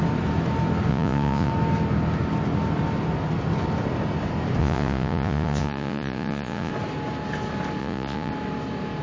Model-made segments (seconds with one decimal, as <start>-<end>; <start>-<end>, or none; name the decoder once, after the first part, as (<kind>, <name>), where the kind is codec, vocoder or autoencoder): 0.9-1.5 (vocoder, Vocos); 4.6-6.7; 7.8-8.3